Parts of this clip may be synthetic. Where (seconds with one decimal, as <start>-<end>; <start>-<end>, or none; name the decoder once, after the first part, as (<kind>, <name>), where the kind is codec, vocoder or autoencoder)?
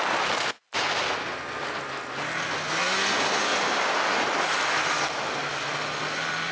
none